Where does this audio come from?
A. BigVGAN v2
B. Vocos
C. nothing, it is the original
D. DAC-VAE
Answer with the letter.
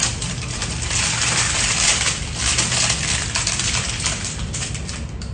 A